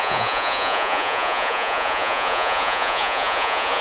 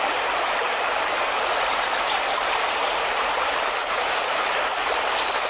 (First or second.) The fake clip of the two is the first